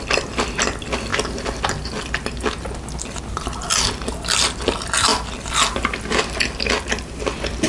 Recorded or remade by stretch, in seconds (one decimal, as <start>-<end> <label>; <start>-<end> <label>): 0.0-7.7 recorded

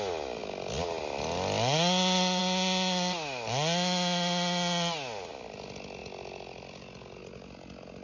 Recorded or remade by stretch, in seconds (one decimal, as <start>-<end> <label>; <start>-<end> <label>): 0.0-8.0 recorded

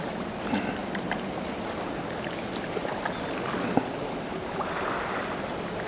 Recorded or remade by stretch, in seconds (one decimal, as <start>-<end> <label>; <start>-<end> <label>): 0.0-0.8 recorded; 0.8-2.0 remade; 2.0-5.9 recorded

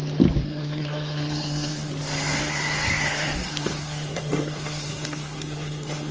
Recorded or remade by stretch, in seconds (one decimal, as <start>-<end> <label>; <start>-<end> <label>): 0.0-0.4 recorded; 0.4-1.9 remade; 1.9-2.4 recorded; 2.4-6.1 remade